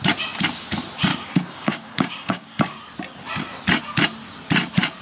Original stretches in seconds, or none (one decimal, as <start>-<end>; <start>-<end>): 0.0-1.1; 2.8-5.0